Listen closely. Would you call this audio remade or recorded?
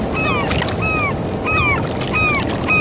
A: recorded